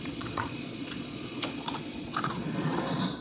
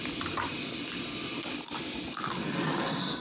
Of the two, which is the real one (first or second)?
second